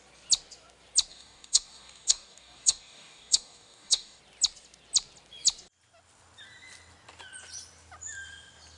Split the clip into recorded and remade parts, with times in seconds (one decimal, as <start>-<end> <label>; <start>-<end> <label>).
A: 0.0-1.1 recorded; 1.1-4.2 remade; 4.2-8.8 recorded